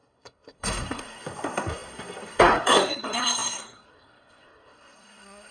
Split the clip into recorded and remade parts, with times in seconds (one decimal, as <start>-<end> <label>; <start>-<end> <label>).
0.0-5.5 remade

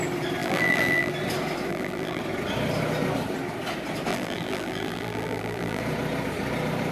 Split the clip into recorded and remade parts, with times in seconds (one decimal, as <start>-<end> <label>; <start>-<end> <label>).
0.0-0.4 recorded; 0.4-1.1 remade; 1.1-1.7 recorded; 1.7-2.2 remade; 2.2-4.1 recorded; 4.1-5.8 remade; 5.8-6.9 recorded

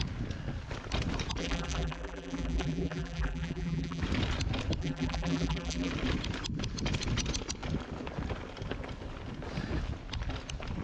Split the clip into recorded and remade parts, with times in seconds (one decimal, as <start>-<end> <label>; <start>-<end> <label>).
0.0-1.4 recorded; 1.4-4.0 remade; 4.0-4.8 recorded; 4.8-5.9 remade; 5.9-10.8 recorded